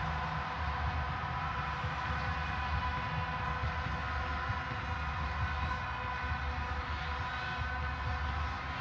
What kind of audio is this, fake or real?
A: real